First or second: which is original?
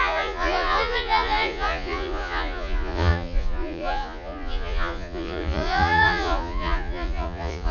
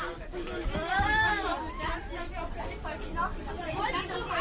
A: second